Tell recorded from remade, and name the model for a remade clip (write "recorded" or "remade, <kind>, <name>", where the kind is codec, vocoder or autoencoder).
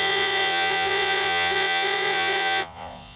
remade, vocoder, Vocos